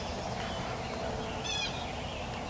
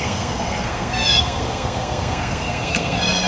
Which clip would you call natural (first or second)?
first